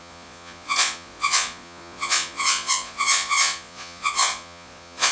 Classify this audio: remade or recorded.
remade